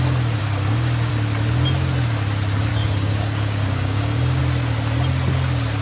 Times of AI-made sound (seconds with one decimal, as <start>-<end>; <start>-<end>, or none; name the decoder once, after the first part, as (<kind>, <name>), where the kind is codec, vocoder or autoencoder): 0.4-1.1 (codec, DAC); 2.7-4.4